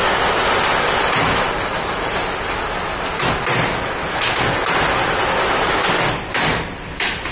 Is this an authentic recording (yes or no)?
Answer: yes